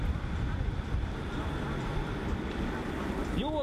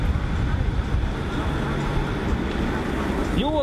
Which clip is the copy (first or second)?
first